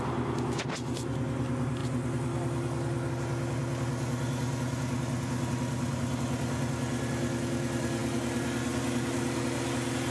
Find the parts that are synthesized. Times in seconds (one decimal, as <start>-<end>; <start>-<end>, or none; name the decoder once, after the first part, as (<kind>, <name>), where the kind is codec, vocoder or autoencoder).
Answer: none